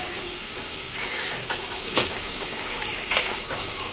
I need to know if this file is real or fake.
fake